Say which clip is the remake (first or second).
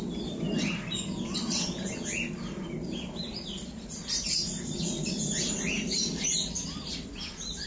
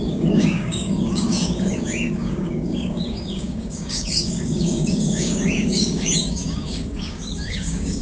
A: second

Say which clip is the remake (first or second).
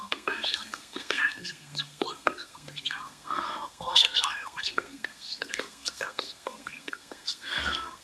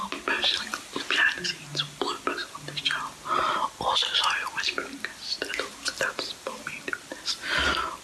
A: first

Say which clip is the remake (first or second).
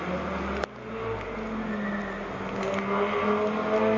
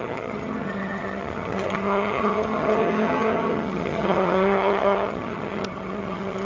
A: second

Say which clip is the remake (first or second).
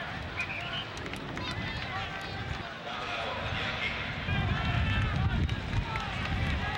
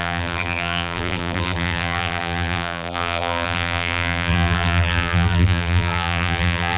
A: second